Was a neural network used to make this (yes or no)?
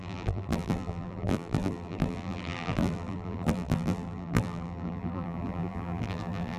yes